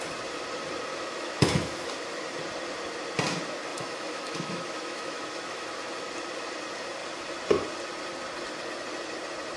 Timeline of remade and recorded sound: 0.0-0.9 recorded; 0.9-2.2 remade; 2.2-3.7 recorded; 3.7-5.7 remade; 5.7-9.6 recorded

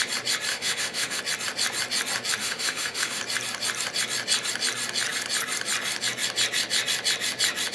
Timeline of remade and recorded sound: 0.0-0.5 recorded; 0.5-1.2 remade; 1.2-2.4 recorded; 2.4-3.2 remade; 3.2-7.7 recorded